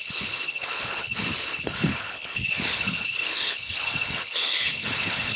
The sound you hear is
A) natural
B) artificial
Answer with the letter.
B